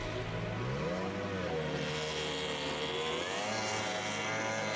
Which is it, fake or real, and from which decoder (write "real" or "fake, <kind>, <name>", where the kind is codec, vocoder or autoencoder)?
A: real